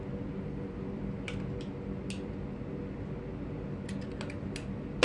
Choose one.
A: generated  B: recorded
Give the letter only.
B